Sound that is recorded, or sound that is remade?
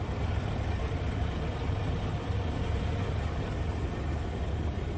recorded